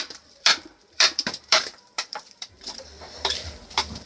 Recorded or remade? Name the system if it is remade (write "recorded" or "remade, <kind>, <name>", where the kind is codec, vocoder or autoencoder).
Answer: remade, vocoder, BigVGAN v2